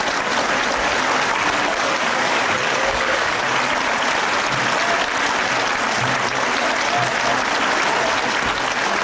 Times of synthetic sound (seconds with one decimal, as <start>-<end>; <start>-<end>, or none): 1.7-3.4